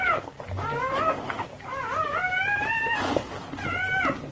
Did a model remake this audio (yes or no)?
no